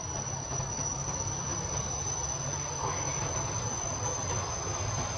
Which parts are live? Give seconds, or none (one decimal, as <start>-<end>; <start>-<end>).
0.0-5.2